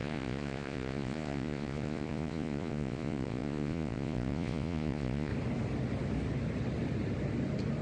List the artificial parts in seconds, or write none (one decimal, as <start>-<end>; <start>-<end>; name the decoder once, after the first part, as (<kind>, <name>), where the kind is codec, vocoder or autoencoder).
0.0-5.3 (vocoder, Vocos)